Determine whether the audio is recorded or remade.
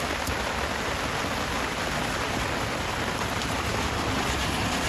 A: recorded